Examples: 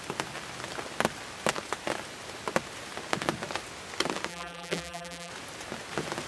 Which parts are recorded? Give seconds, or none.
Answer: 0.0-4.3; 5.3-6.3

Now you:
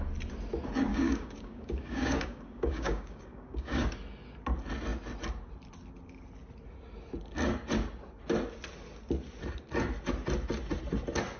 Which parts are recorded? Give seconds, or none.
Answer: 0.0-0.9; 3.8-11.4

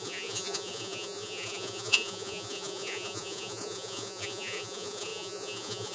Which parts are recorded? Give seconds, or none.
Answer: none

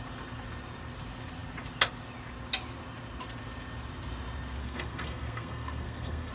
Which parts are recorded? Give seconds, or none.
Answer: 0.0-4.6